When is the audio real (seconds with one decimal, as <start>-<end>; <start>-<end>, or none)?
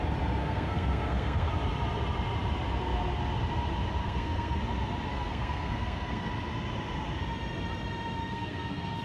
0.0-0.4; 1.5-4.0; 4.6-5.1; 6.3-8.2